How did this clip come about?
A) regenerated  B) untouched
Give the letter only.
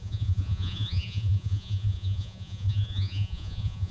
A